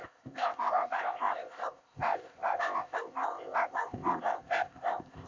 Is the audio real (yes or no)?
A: no